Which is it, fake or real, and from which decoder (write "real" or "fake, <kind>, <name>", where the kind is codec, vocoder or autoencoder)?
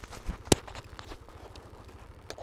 real